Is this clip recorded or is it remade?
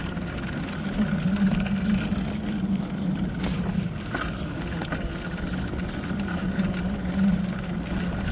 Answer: recorded